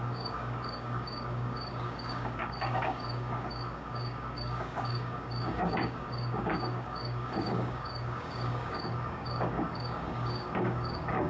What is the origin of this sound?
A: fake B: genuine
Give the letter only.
A